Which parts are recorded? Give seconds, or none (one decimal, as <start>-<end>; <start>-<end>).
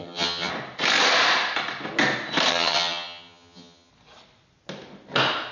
0.5-2.5; 3.9-5.5